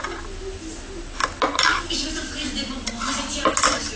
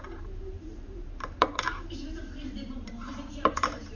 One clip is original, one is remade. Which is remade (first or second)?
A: second